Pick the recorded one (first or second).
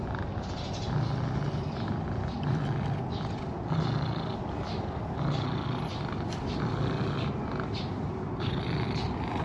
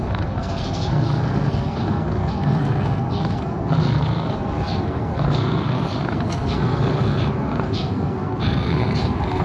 first